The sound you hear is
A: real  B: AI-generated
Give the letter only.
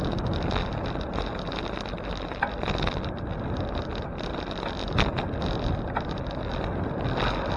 A